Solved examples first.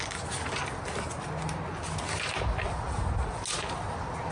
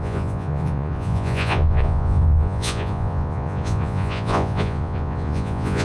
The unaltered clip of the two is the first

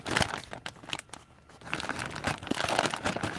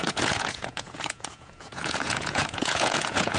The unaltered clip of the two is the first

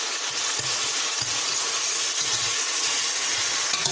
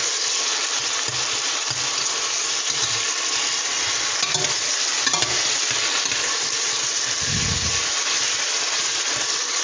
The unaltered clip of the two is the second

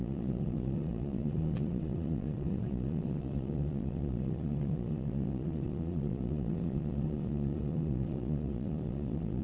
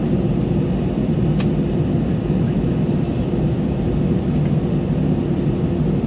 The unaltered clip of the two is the second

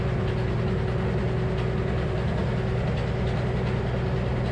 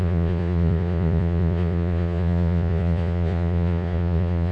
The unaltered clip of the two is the first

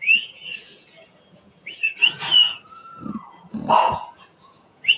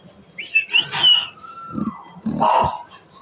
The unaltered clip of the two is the second